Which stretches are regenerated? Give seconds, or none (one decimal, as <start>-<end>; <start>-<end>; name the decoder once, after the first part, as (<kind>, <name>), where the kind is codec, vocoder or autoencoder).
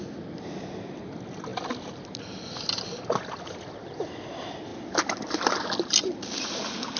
none